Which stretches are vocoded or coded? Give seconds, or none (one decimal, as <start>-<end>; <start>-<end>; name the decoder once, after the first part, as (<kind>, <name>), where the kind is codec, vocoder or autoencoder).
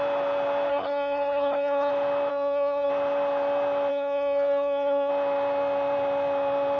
0.7-1.9 (codec, SNAC); 2.3-2.9; 3.9-5.1